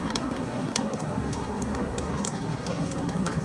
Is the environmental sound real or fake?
fake